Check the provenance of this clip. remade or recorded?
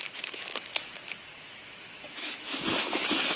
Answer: remade